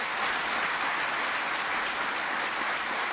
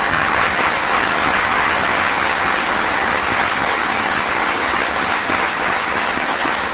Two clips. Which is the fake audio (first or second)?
second